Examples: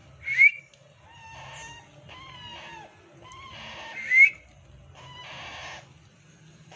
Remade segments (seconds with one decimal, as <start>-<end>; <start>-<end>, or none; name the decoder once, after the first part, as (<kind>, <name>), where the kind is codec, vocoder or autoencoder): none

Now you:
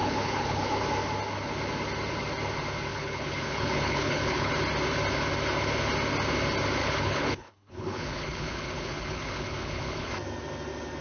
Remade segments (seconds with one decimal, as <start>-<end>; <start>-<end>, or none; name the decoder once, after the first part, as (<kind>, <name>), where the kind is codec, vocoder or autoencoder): 0.0-0.8 (codec, HILCodec); 2.9-4.5; 6.8-10.1

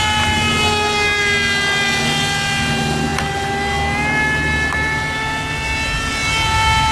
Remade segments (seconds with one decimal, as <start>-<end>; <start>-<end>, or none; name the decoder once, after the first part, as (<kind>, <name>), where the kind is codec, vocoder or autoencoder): none